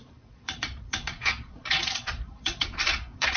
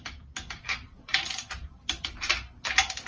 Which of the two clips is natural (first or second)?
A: second